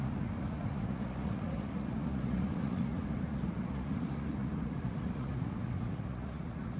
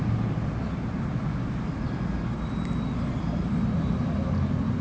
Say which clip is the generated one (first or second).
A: first